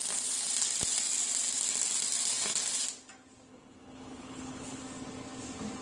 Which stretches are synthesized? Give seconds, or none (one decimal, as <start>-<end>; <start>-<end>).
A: 3.5-4.8